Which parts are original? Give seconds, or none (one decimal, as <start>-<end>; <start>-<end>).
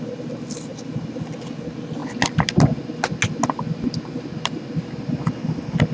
0.0-5.9